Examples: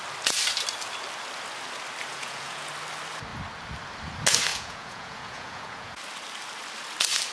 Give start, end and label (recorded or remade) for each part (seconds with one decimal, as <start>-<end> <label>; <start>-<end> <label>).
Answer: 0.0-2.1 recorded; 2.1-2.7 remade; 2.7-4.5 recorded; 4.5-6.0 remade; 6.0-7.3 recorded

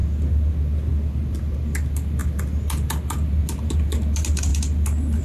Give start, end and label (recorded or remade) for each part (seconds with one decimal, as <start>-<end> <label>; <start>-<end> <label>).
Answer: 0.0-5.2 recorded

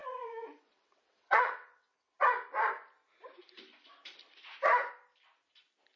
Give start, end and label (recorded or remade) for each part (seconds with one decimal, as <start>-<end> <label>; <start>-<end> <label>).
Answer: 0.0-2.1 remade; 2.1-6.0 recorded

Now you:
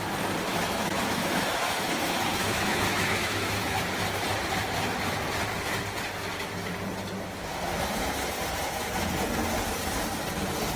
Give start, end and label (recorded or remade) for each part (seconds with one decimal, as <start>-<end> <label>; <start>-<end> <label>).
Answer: 0.0-0.5 recorded; 0.5-3.8 remade; 3.8-10.8 recorded